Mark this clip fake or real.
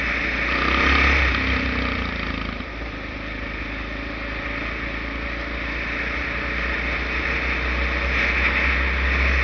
real